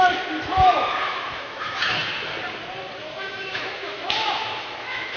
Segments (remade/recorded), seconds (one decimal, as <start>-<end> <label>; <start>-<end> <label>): 0.0-1.0 recorded; 1.0-2.1 remade; 2.1-3.0 recorded; 3.0-5.2 remade